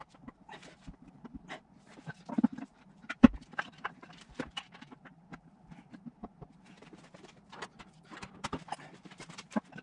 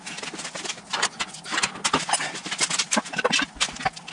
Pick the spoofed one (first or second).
first